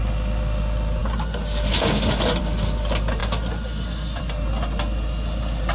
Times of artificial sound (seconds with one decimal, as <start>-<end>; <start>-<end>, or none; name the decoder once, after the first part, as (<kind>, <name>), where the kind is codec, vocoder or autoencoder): none